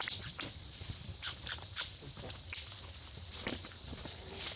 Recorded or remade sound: remade